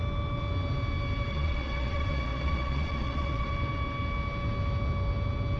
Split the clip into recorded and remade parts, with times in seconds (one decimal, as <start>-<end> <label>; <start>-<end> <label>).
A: 0.0-1.3 recorded; 1.3-3.5 remade; 3.5-5.6 recorded